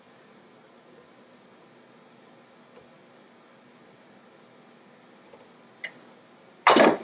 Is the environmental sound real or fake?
real